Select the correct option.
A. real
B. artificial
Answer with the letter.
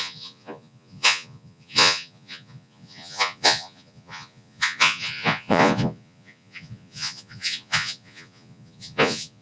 B